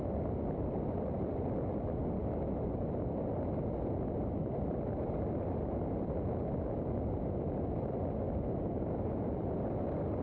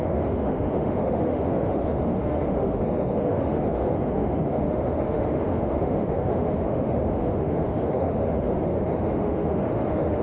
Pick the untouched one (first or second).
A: first